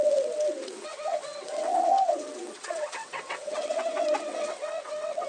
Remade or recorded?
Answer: remade